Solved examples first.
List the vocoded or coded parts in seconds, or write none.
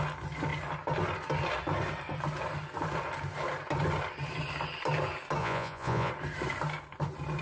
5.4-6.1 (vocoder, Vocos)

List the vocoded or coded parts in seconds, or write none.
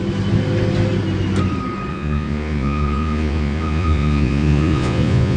1.9-5.4 (vocoder, Vocos)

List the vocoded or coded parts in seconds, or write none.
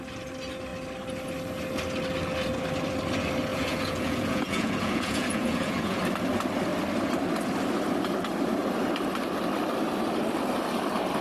3.5-6.0 (vocoder, Vocos)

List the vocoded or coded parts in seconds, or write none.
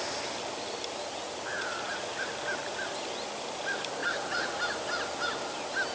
1.5-2.3 (vocoder, Vocos); 4.0-4.6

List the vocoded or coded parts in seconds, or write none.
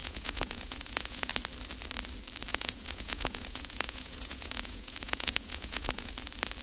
0.0-1.3 (vocoder, Vocos); 2.5-6.1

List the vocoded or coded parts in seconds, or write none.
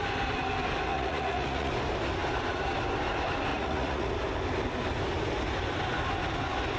0.9-1.7 (vocoder, Vocos); 3.5-4.1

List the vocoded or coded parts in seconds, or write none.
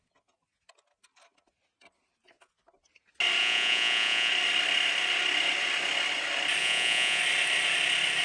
3.4-4.3 (vocoder, Vocos); 6.6-7.2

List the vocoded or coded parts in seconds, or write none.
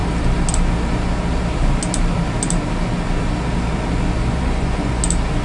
4.2-5.0 (vocoder, Vocos)